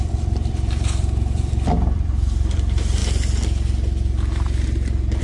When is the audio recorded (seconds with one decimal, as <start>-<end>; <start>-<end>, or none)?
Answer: 3.0-5.2